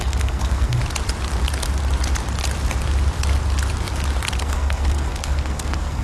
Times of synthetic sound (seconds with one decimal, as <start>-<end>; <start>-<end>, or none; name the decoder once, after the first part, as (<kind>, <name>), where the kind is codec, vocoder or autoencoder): 0.0-0.8 (codec, SNAC); 4.4-6.0